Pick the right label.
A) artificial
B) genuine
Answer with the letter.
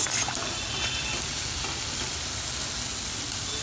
B